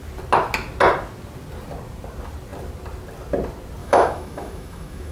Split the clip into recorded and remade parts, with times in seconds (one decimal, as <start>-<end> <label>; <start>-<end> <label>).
0.0-3.8 recorded; 3.8-5.1 remade

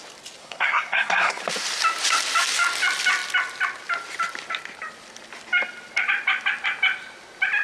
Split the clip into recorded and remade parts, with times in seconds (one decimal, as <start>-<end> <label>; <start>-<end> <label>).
0.0-0.4 recorded; 0.4-1.4 remade; 1.4-7.6 recorded

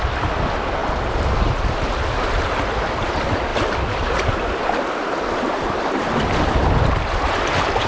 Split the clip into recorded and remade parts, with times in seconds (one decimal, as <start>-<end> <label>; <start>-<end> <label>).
0.0-7.9 recorded

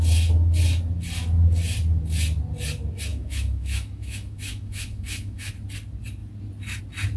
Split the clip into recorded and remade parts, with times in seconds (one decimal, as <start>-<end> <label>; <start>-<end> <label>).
0.0-3.1 recorded; 3.1-5.5 remade; 5.5-7.2 recorded

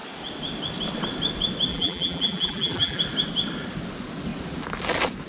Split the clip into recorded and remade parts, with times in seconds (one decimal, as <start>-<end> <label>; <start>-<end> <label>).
0.0-1.7 recorded; 1.7-3.0 remade; 3.0-5.3 recorded

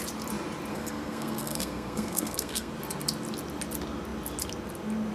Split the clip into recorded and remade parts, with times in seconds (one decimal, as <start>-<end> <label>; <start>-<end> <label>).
0.0-0.7 recorded; 0.7-2.7 remade; 2.7-5.1 recorded

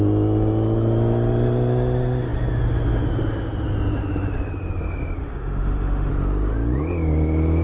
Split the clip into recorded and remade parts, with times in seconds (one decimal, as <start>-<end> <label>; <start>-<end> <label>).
0.0-5.2 recorded; 5.2-6.1 remade; 6.1-7.6 recorded

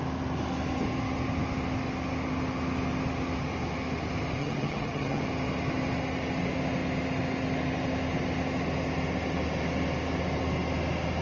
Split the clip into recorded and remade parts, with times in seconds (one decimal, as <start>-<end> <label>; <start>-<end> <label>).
0.0-4.4 recorded; 4.4-5.2 remade; 5.2-11.2 recorded